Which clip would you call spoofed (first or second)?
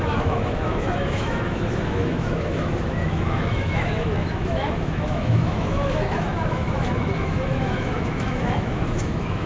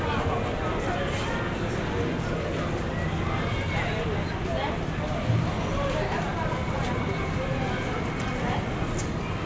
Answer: first